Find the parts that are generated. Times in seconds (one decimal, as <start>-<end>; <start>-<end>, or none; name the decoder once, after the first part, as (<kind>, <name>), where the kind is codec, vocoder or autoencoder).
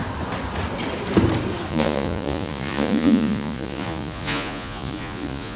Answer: 1.7-5.6 (vocoder, Vocos)